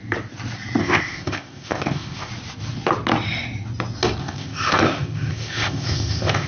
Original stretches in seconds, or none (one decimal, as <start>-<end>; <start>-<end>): 0.0-0.8; 2.3-4.2